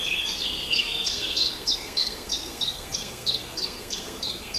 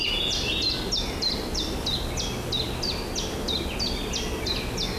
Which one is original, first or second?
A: second